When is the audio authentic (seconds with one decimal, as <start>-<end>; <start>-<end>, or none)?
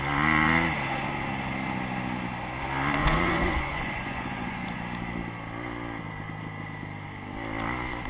0.0-3.0; 4.8-8.1